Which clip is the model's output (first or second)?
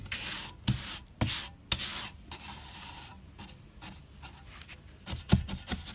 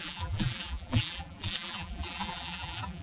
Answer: second